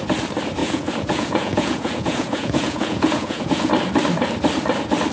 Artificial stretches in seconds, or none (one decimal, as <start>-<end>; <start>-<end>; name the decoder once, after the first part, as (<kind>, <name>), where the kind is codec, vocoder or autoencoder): 0.6-3.7 (vocoder, Vocos)